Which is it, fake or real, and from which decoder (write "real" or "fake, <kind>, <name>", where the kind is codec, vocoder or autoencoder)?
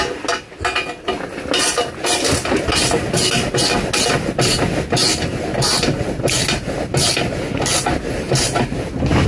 real